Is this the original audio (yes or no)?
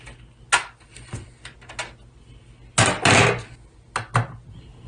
yes